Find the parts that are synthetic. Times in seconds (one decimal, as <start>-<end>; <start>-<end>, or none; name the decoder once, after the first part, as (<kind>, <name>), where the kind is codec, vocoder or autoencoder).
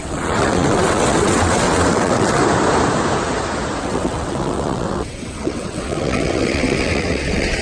0.0-2.4 (vocoder, WaveNeXt); 3.8-7.6